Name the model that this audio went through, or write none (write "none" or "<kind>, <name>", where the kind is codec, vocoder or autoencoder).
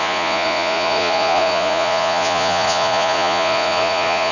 vocoder, Vocos